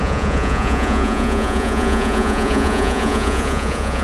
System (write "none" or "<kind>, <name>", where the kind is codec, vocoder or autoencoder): vocoder, Vocos